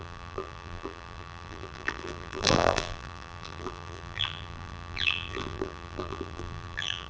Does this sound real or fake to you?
fake